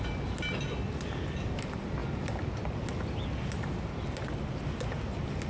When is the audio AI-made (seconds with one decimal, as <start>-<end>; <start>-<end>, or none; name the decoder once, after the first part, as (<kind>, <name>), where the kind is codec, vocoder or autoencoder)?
none